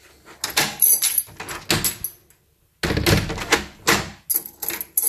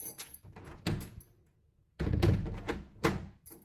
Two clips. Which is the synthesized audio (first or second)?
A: second